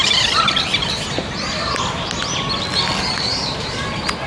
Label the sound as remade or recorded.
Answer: recorded